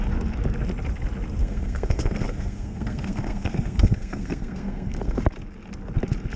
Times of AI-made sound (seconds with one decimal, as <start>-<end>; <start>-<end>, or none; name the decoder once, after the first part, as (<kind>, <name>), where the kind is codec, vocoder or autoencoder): 1.4-5.2 (codec, SNAC)